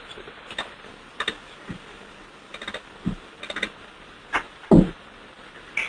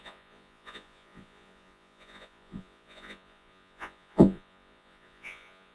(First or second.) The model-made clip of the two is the second